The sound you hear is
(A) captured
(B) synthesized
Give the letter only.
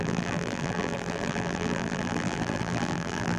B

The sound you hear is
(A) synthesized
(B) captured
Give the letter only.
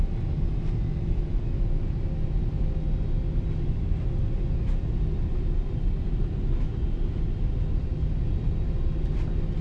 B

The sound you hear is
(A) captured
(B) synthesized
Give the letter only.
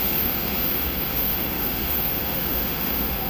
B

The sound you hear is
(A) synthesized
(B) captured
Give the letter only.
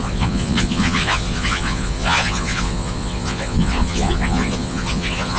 A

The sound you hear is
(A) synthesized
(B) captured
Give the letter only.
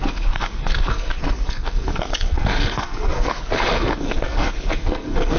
A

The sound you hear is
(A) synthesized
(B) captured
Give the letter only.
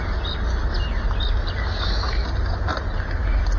B